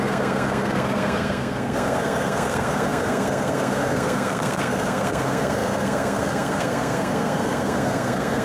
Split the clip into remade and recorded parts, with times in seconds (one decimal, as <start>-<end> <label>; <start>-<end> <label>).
0.0-8.4 remade